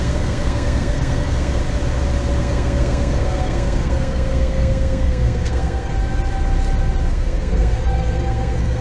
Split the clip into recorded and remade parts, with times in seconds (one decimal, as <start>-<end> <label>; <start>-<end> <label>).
0.0-1.6 remade; 1.6-2.4 recorded; 2.4-5.9 remade; 5.9-7.1 recorded; 7.1-8.8 remade